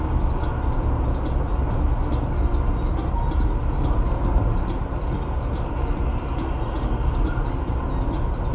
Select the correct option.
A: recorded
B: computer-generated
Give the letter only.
A